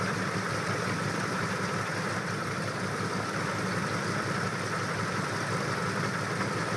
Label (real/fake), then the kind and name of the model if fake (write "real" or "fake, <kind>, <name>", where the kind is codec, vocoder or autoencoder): real